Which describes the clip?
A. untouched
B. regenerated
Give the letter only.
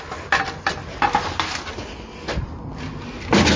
A